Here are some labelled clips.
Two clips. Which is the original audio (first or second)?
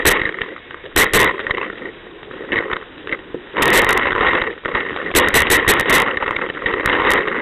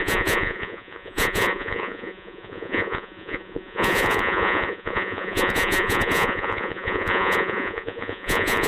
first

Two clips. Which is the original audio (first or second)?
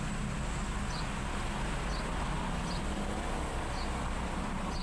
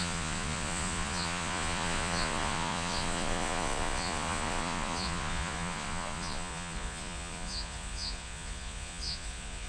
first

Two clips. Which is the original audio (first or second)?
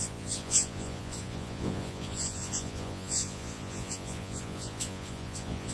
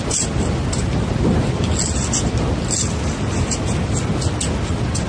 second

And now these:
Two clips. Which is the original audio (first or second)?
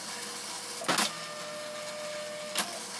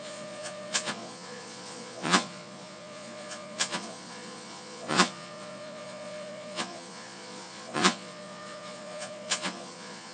first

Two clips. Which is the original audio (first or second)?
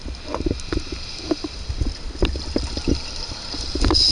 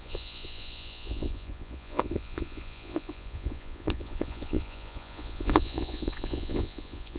first